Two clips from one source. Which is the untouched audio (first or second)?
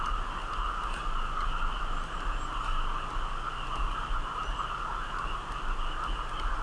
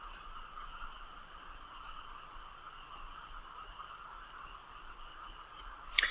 first